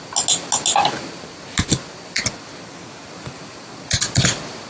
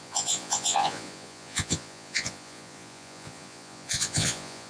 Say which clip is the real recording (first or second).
first